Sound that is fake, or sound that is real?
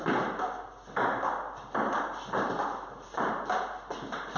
real